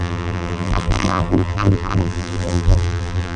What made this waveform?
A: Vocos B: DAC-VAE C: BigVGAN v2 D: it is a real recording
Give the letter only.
C